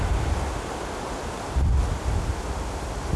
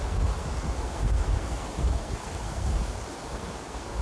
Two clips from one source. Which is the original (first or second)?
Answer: first